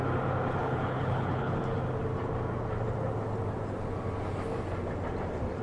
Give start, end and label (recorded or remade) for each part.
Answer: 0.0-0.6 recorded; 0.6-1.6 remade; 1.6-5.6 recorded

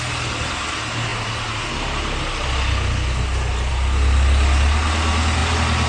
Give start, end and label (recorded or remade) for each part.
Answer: 0.0-5.9 recorded